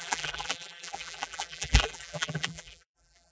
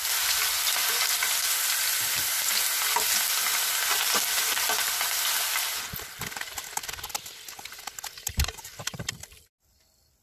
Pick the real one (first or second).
second